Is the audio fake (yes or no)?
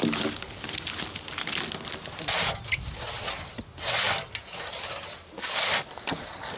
no